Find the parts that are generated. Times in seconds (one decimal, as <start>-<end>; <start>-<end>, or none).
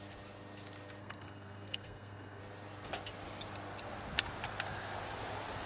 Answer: 1.0-2.4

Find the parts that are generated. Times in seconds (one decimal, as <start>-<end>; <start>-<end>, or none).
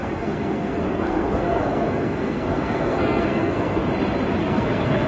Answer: 0.0-3.8; 4.4-5.1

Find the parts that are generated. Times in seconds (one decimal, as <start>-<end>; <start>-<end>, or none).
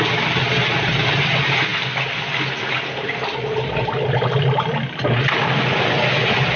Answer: none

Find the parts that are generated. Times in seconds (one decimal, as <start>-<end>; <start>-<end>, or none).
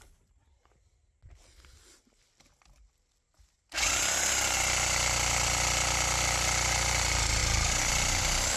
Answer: none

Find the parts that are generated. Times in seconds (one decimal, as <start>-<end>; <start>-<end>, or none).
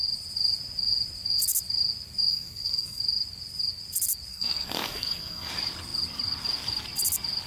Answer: 2.3-3.0; 4.3-5.5